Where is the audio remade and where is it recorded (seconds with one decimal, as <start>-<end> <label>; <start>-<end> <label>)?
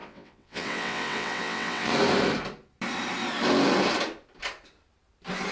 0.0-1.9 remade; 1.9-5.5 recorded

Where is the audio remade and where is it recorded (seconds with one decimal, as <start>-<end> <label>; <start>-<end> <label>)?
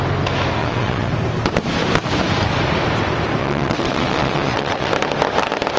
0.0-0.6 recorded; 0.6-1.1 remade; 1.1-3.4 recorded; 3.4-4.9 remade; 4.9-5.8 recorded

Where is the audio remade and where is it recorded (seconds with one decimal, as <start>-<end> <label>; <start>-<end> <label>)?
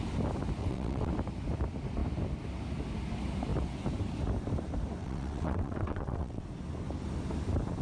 0.0-0.6 recorded; 0.6-1.1 remade; 1.1-5.0 recorded; 5.0-6.4 remade; 6.4-7.8 recorded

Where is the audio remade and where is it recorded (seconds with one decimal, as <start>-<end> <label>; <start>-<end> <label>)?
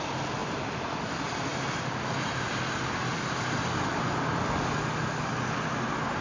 0.0-6.2 recorded